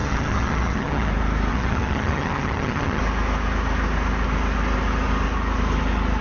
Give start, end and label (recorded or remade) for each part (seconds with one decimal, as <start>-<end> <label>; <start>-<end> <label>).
0.0-1.1 remade; 1.1-1.5 recorded; 1.5-3.0 remade; 3.0-6.2 recorded

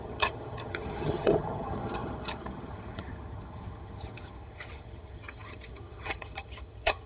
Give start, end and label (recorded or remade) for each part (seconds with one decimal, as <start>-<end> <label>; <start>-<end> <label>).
0.0-7.1 remade

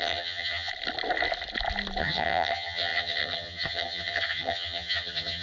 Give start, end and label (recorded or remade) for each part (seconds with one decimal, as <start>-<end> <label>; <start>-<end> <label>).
0.0-0.7 remade; 0.7-2.0 recorded; 2.0-5.4 remade

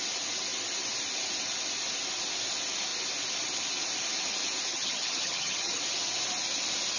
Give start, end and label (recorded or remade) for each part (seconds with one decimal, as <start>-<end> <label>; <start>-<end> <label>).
0.0-4.7 recorded; 4.7-5.8 remade; 5.8-7.0 recorded